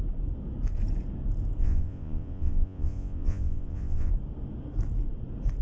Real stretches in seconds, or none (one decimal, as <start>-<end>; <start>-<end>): 0.0-1.6; 4.1-5.6